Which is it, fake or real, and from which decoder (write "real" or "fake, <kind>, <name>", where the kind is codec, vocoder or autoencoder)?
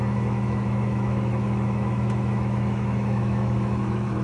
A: fake, autoencoder, DAC-VAE